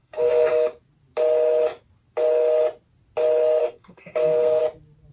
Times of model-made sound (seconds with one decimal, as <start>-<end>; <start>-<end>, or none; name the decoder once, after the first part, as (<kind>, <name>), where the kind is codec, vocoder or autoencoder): 0.0-0.5 (codec, SNAC); 3.6-4.6

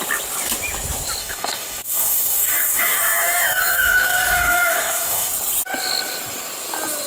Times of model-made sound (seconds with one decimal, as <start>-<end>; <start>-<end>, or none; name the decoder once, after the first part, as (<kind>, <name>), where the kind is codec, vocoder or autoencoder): 1.2-5.3 (codec, DAC)

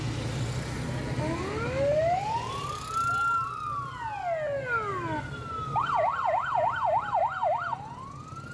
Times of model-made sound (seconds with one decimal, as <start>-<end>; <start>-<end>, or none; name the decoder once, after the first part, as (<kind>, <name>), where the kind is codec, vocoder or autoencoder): none

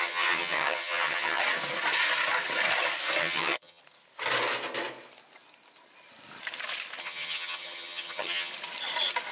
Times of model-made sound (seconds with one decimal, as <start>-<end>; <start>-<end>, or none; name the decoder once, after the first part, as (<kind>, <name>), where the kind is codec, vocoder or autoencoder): 0.0-1.4 (vocoder, HiFi-GAN); 3.2-3.8; 7.0-8.5

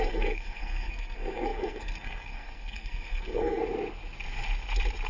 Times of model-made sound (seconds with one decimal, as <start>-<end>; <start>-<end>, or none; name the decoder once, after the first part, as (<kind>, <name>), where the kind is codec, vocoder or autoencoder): 0.0-3.6 (codec, SNAC)

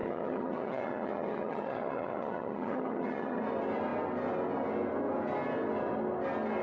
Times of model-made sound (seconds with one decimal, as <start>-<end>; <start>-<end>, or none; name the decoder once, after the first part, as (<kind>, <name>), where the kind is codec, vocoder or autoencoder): 0.0-3.4 (vocoder, HiFi-GAN)